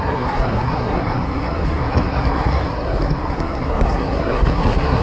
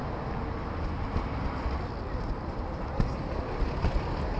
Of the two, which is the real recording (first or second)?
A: second